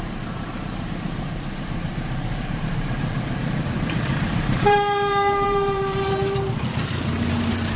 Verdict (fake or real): fake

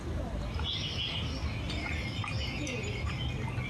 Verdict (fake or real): real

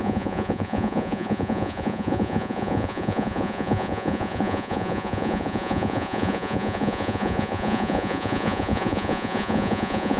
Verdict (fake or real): fake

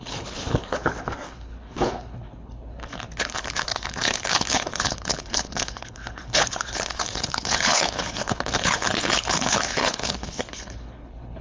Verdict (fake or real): fake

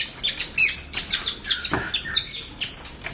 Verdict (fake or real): real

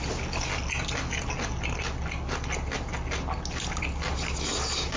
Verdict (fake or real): real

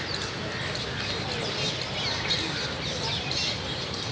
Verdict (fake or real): real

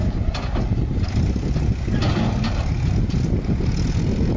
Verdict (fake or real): real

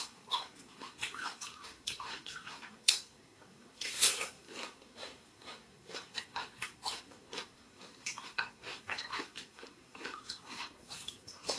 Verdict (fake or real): fake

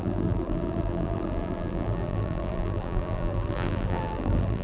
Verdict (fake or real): fake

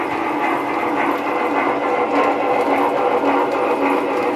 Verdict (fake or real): real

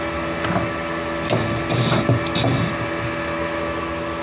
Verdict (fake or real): real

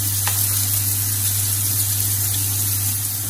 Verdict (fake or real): real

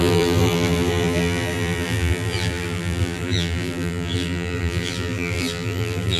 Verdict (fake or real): fake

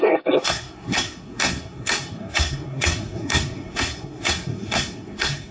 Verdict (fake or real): fake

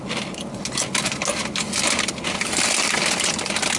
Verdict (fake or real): real